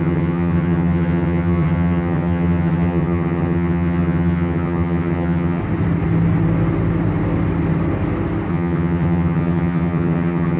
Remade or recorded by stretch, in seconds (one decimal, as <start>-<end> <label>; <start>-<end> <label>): 0.0-5.6 remade; 5.6-8.5 recorded; 8.5-10.6 remade